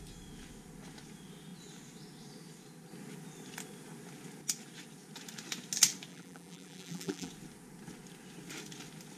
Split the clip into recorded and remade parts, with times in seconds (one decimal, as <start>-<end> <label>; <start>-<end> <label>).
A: 0.0-6.1 recorded; 6.1-7.3 remade; 7.3-9.2 recorded